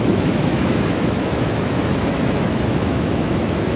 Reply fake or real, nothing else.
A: fake